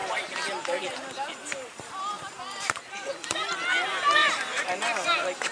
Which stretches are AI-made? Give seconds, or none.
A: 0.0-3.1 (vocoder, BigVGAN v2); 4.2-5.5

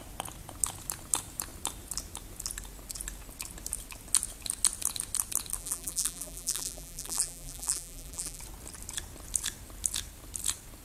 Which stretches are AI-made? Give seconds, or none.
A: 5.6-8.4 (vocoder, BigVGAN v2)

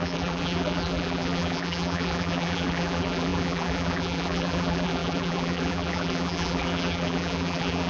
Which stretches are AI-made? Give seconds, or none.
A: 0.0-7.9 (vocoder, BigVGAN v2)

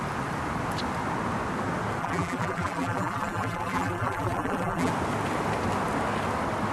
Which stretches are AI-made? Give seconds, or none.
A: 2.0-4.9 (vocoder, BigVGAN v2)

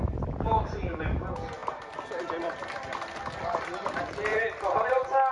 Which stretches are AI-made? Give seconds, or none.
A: 4.3-5.3 (vocoder, BigVGAN v2)